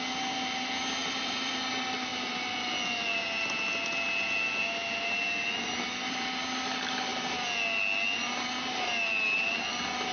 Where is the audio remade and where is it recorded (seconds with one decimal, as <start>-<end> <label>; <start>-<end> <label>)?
0.0-1.0 recorded; 1.0-1.5 remade; 1.5-10.1 recorded